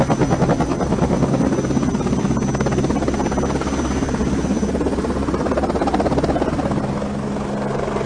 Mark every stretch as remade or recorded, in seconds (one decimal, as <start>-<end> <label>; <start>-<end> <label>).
0.0-8.1 recorded